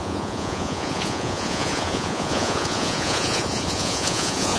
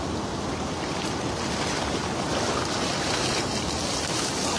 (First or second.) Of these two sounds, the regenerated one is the first